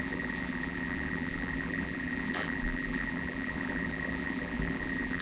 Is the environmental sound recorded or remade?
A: remade